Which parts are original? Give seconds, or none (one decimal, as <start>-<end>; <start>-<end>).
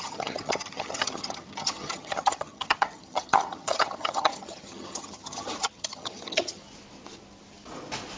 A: 6.6-8.2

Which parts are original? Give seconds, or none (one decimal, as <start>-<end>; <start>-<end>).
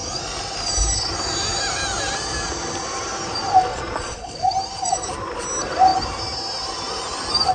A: 0.0-3.7; 4.3-7.5